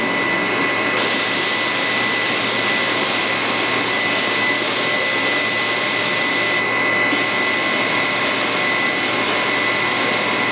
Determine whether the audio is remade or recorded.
recorded